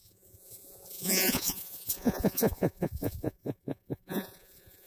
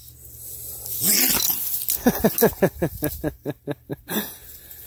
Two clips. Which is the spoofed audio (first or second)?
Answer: first